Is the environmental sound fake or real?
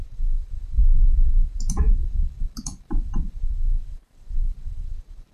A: fake